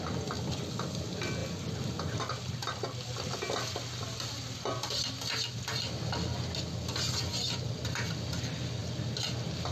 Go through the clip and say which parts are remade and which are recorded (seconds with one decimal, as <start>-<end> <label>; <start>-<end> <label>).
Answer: 0.0-9.7 recorded